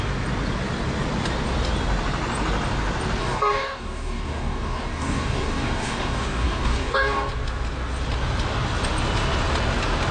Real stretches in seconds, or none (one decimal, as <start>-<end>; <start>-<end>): 0.0-3.2; 7.3-10.1